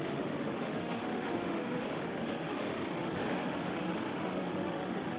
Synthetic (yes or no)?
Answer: yes